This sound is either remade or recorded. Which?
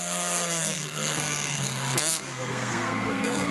remade